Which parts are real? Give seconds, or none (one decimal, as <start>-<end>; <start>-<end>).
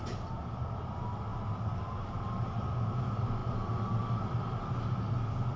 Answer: 0.0-5.6